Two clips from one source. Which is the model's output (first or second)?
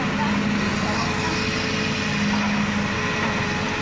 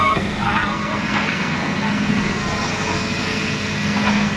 second